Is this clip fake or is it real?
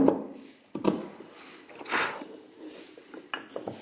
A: real